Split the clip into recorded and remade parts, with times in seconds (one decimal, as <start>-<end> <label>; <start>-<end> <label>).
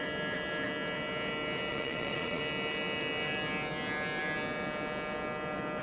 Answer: 0.0-1.7 recorded; 1.7-2.4 remade; 2.4-5.8 recorded